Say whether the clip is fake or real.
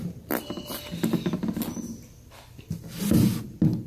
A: real